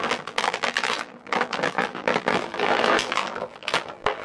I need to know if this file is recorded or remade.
remade